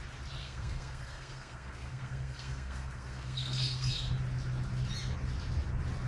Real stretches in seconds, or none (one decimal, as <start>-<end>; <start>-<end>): 0.0-0.4; 4.1-6.1